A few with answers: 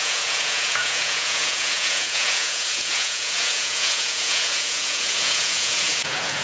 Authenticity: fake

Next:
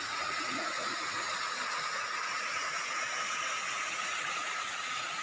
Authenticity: fake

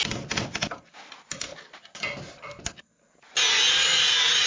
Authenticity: real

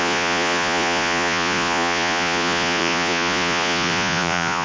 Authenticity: fake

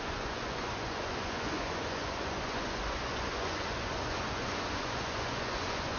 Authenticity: fake